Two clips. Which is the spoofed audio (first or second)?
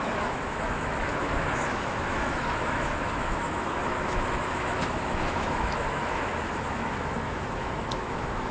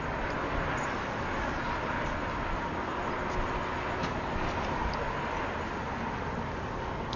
first